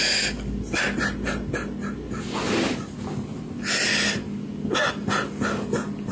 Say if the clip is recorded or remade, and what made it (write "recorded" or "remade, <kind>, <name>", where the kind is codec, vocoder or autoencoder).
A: recorded